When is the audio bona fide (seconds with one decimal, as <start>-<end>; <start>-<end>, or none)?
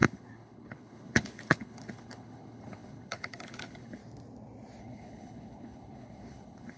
4.0-4.8